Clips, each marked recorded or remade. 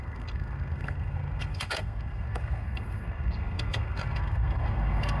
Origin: remade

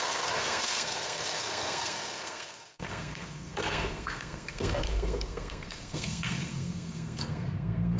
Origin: remade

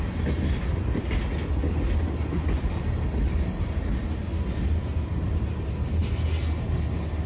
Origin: recorded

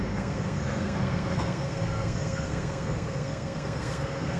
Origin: remade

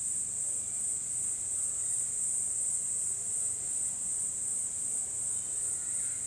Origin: recorded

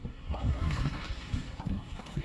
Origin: remade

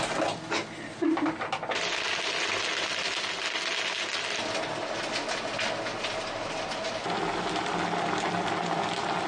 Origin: recorded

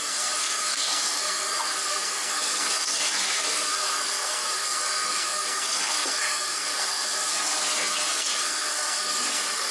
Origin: remade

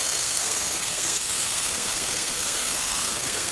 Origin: remade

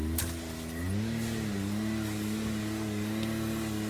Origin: recorded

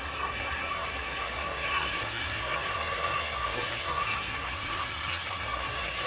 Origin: remade